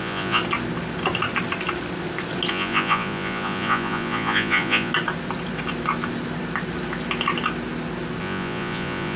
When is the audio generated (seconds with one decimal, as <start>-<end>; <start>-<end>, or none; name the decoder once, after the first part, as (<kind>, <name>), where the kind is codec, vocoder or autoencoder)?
0.0-0.4 (vocoder, Vocos); 2.5-4.9; 8.2-9.2